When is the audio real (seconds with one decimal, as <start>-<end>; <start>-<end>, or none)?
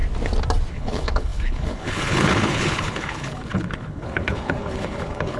0.0-0.7